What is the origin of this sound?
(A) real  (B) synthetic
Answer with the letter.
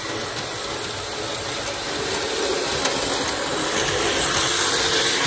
A